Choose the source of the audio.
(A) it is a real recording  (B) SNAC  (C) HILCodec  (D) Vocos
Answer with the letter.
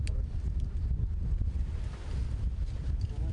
A